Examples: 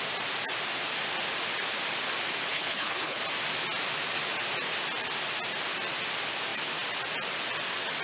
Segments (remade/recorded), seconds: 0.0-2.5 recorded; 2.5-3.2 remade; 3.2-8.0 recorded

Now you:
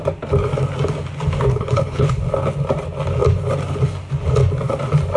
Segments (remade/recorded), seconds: 0.0-1.5 recorded; 1.5-2.2 remade; 2.2-5.2 recorded

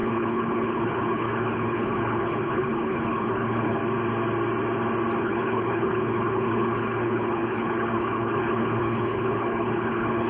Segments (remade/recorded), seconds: 0.0-3.8 remade; 3.8-5.2 recorded; 5.2-10.3 remade

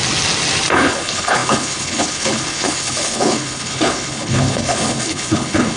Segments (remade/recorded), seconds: 0.0-0.7 recorded; 0.7-5.8 remade

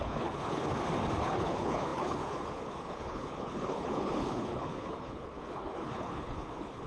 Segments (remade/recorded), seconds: 0.0-0.7 remade; 0.7-1.2 recorded; 1.2-6.9 remade

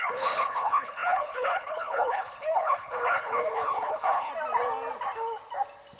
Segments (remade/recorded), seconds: 0.0-4.3 remade; 4.3-6.0 recorded

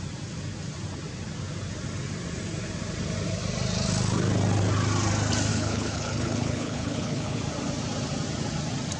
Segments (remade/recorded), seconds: 0.0-5.5 recorded; 5.5-7.4 remade; 7.4-9.0 recorded